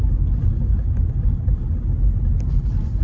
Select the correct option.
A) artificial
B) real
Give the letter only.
B